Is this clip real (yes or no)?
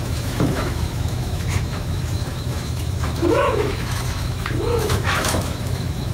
no